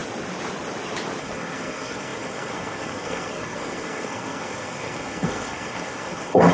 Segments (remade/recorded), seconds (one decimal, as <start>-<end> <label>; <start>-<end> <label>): 0.0-1.2 recorded; 1.2-6.5 remade